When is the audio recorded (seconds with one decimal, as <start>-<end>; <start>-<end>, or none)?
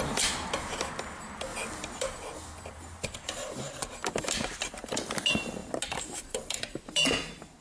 0.0-7.6